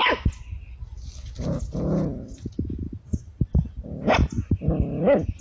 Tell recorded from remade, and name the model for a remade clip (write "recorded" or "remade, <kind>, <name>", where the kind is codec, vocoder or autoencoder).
recorded